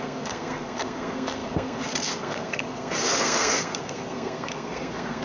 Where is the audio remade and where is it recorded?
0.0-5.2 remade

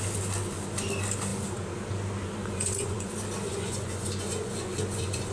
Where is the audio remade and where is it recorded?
0.0-2.4 recorded; 2.4-3.1 remade; 3.1-3.5 recorded; 3.5-5.3 remade